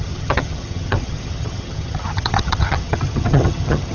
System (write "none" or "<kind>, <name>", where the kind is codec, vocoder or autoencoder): vocoder, HiFi-GAN